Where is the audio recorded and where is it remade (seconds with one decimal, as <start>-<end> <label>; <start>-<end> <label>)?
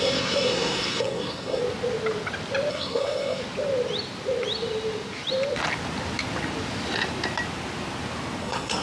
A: 0.0-1.6 remade; 1.6-2.7 recorded; 2.7-3.4 remade; 3.4-8.4 recorded; 8.4-8.8 remade